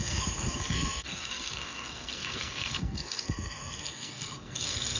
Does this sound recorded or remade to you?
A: remade